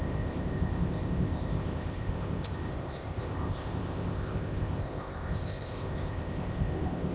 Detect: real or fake fake